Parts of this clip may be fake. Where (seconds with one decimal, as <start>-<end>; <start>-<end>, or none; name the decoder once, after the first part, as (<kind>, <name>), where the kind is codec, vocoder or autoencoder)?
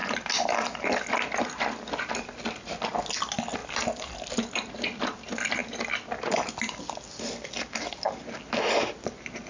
0.0-2.1 (vocoder, BigVGAN v2)